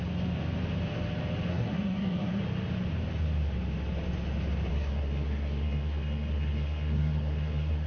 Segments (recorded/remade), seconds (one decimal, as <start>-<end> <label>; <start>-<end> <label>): 0.0-1.5 recorded; 1.5-2.4 remade; 2.4-4.7 recorded; 4.7-7.9 remade